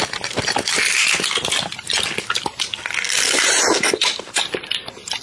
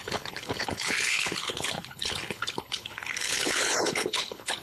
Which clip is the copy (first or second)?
second